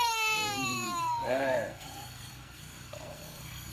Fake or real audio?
fake